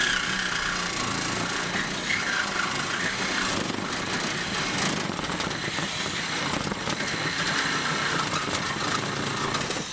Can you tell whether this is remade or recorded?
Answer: recorded